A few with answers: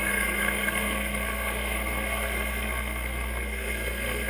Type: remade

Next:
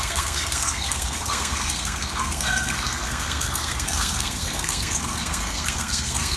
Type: remade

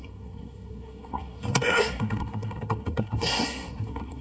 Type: remade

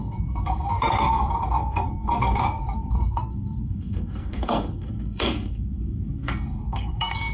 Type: remade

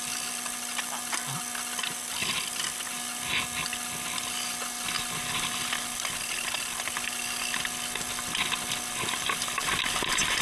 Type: recorded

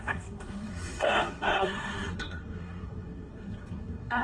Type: remade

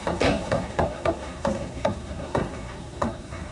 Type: remade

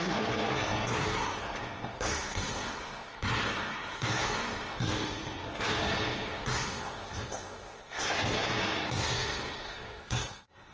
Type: remade